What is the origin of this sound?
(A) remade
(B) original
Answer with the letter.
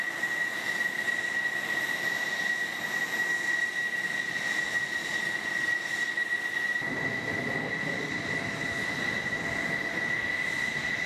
B